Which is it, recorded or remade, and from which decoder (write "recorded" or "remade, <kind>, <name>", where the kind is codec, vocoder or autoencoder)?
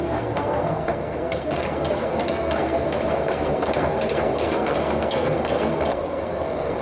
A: remade, codec, SNAC